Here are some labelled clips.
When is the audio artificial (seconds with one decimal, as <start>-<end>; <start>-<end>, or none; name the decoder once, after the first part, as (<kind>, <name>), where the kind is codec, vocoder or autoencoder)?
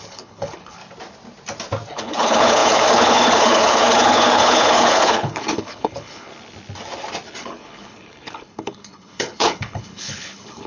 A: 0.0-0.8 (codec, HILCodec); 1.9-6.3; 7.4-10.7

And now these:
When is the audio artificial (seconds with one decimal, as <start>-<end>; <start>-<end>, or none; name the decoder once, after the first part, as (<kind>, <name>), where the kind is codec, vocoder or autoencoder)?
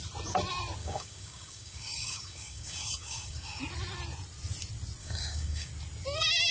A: 0.8-3.6 (codec, DAC); 5.0-5.7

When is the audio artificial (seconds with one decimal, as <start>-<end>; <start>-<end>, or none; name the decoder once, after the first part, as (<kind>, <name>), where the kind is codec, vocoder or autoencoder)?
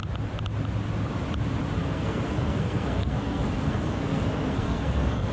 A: 1.8-5.3 (codec, SNAC)